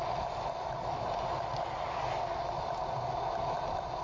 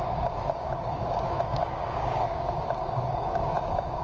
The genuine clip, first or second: first